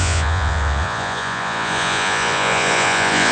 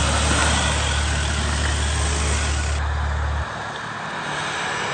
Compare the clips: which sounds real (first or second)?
second